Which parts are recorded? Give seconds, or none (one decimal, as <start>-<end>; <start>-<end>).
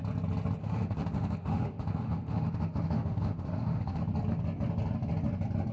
0.0-0.6; 4.0-5.7